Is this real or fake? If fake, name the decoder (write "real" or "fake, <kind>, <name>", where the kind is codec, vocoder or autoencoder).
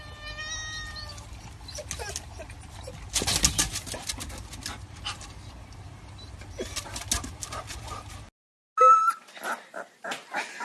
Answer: real